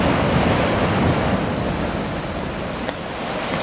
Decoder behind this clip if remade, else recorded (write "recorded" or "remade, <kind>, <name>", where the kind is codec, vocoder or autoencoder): recorded